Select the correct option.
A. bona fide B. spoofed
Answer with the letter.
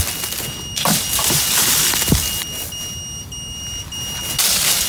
A